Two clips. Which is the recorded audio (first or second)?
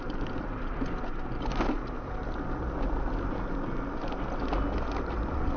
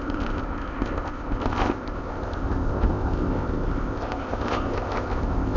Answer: first